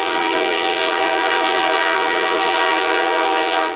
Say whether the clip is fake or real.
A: fake